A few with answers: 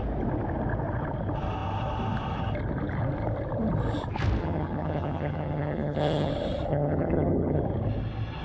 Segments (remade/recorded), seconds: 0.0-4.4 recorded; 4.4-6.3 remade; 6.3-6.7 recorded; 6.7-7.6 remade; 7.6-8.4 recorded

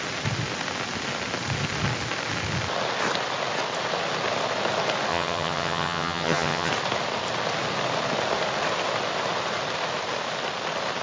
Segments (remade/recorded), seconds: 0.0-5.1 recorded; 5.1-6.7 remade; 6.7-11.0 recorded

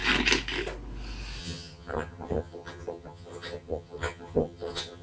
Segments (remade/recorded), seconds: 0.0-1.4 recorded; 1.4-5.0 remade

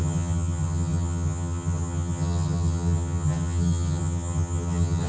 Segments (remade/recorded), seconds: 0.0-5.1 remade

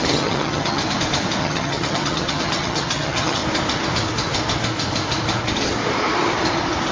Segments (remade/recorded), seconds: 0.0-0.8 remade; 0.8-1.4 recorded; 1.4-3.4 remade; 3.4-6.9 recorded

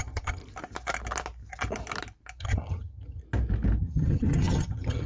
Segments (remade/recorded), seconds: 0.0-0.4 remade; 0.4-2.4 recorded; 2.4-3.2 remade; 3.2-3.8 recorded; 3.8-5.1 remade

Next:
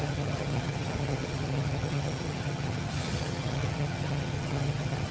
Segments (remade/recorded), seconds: 0.0-5.1 remade